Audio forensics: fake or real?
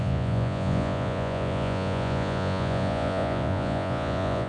fake